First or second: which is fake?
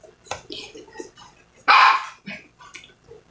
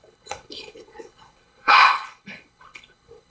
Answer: second